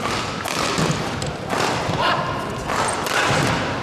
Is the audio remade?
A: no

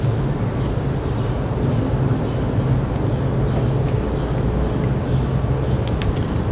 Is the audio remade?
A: no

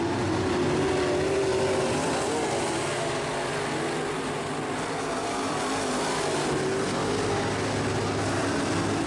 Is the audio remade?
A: no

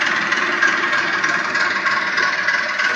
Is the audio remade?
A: yes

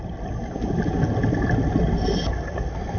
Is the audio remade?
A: no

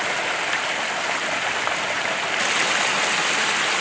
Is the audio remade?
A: no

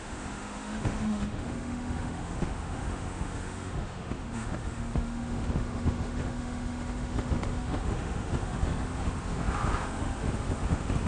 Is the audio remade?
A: yes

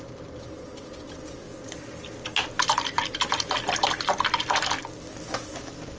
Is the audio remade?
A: no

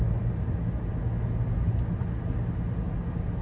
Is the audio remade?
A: no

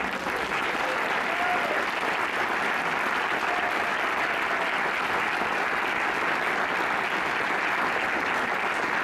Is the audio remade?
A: no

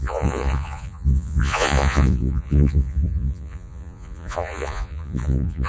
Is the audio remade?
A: yes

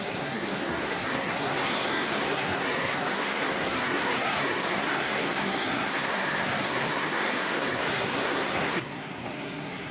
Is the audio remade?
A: yes